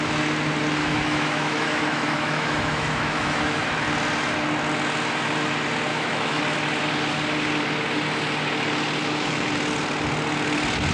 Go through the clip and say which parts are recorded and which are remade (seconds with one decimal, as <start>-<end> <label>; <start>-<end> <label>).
0.0-0.8 recorded; 0.8-3.6 remade; 3.6-5.9 recorded; 5.9-6.4 remade; 6.4-9.0 recorded; 9.0-9.5 remade; 9.5-10.9 recorded

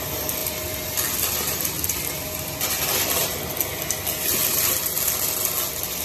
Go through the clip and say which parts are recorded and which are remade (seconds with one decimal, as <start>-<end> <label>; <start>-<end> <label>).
0.0-6.0 recorded

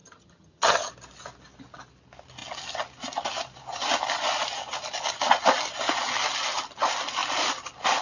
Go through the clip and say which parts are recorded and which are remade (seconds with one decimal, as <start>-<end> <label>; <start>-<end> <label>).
0.0-0.9 remade; 0.9-8.0 recorded

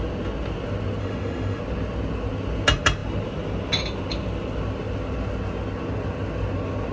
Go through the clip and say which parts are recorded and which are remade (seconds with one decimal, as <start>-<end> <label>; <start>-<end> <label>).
0.0-1.0 recorded; 1.0-1.6 remade; 1.6-6.9 recorded

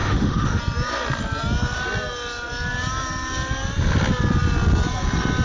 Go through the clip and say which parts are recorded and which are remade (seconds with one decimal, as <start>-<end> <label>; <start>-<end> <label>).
0.0-0.6 remade; 0.6-5.4 recorded

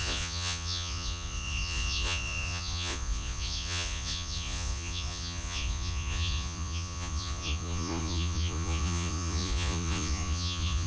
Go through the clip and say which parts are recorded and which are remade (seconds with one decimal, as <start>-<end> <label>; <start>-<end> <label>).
0.0-10.9 remade

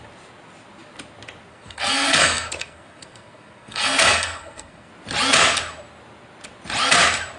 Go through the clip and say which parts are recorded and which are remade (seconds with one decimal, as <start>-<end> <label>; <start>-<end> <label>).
0.0-1.5 recorded; 1.5-4.9 remade; 4.9-7.4 recorded